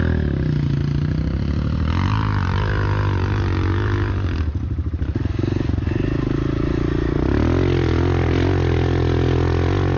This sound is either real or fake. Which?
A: real